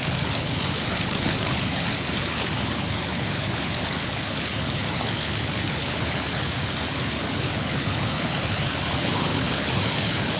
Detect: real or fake fake